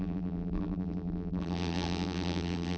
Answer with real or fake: fake